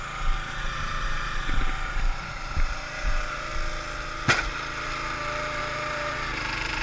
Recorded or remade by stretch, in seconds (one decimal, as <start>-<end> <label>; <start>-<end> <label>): 0.0-3.5 remade; 3.5-5.6 recorded; 5.6-6.8 remade